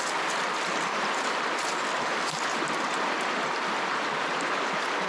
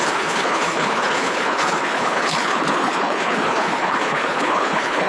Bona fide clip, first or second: first